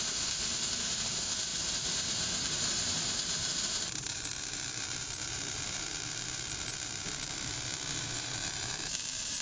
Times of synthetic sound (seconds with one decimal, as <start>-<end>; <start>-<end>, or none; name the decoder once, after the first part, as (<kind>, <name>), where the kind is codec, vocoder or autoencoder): 0.0-9.4 (vocoder, BigVGAN v2)